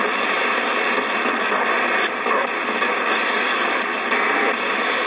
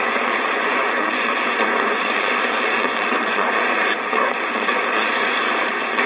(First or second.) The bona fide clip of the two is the first